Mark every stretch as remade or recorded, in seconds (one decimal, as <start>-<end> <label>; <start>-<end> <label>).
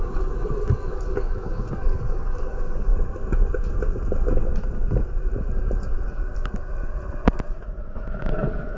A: 0.0-2.9 remade; 2.9-7.8 recorded; 7.8-8.8 remade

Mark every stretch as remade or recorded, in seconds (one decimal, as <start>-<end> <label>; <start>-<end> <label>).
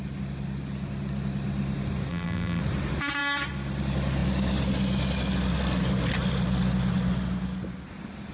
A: 0.0-2.1 recorded; 2.1-2.6 remade; 2.6-8.3 recorded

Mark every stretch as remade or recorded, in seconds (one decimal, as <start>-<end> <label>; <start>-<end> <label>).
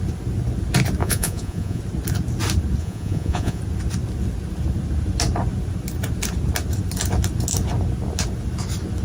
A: 0.0-1.0 recorded; 1.0-1.8 remade; 1.8-2.8 recorded; 2.8-3.6 remade; 3.6-9.0 recorded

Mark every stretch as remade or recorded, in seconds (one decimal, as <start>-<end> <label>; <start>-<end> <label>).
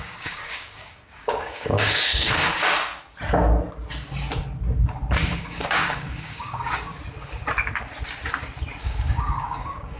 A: 0.0-2.9 remade; 2.9-5.4 recorded; 5.4-6.9 remade; 6.9-8.8 recorded; 8.8-10.0 remade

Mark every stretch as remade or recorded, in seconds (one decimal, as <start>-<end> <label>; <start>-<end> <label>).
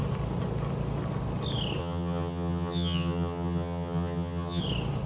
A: 0.0-1.8 recorded; 1.8-4.6 remade; 4.6-5.1 recorded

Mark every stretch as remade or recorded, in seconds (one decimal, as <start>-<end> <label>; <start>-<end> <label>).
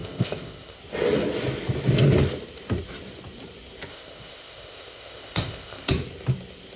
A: 0.0-0.8 remade; 0.8-3.9 recorded; 3.9-5.9 remade; 5.9-6.8 recorded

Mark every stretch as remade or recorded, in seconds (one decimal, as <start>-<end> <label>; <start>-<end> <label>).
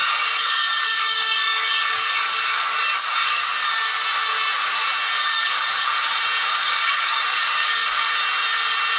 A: 0.0-3.7 remade; 3.7-5.2 recorded; 5.2-5.9 remade; 5.9-6.6 recorded; 6.6-8.1 remade; 8.1-9.0 recorded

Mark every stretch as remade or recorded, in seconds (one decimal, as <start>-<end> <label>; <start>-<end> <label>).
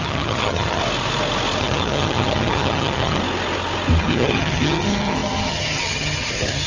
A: 0.0-0.8 remade; 0.8-1.6 recorded; 1.6-3.2 remade; 3.2-4.0 recorded; 4.0-6.7 remade